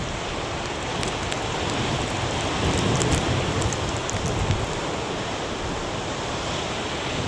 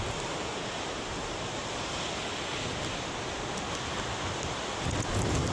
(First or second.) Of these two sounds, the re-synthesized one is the first